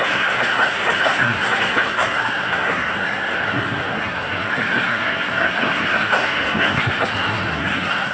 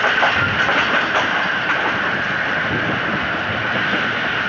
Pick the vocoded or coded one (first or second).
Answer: first